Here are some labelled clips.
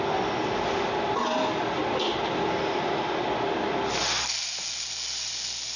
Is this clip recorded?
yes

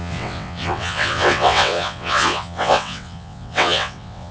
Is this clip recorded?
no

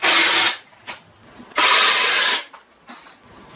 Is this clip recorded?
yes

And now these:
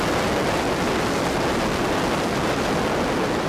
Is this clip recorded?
yes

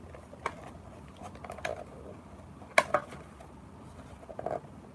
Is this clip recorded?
yes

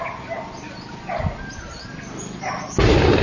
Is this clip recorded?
yes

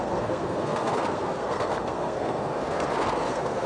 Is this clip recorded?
no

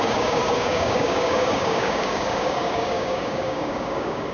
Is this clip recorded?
no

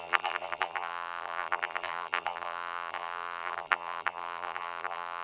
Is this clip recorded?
no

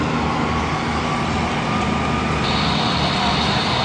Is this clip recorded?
no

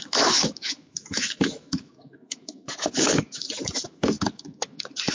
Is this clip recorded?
no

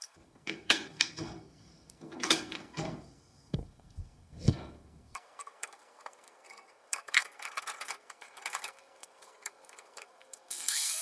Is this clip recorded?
no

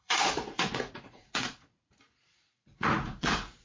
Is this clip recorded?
no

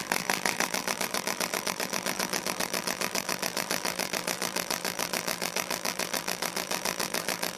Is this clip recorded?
no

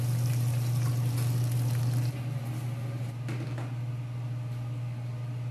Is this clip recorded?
yes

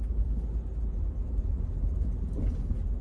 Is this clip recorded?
yes